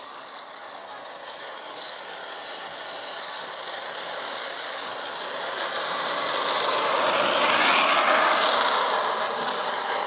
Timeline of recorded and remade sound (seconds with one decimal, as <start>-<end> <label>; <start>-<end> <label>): 0.0-0.8 remade; 0.8-1.4 recorded; 1.4-2.2 remade; 2.2-3.2 recorded; 3.2-4.9 remade; 4.9-9.7 recorded; 9.7-10.1 remade